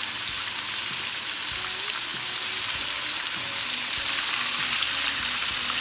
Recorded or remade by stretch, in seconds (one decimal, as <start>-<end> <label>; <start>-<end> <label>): 0.0-5.8 recorded